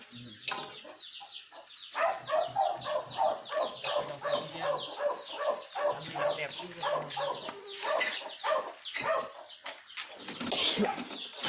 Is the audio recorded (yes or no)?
yes